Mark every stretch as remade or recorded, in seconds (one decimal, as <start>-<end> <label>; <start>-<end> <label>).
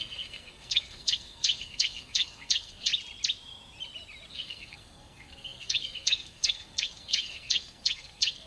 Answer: 0.0-2.9 remade; 2.9-4.3 recorded; 4.3-8.5 remade